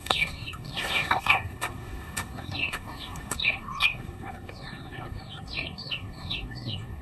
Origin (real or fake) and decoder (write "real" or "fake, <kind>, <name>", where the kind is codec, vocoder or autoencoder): fake, codec, SNAC